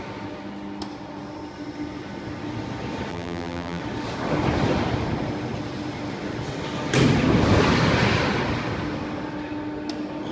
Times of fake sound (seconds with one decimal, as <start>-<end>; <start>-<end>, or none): 3.1-3.8